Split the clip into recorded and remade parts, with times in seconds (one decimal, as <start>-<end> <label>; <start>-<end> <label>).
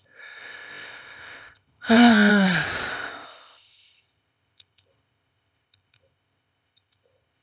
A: 0.0-2.3 remade; 2.3-2.9 recorded; 2.9-7.4 remade